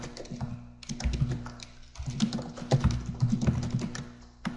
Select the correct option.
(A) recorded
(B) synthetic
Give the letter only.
A